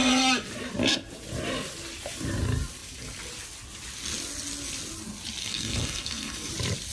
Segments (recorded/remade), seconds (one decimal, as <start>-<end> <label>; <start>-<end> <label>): 0.0-5.4 recorded; 5.4-6.5 remade; 6.5-6.9 recorded